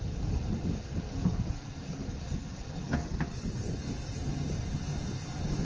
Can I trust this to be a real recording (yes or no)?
yes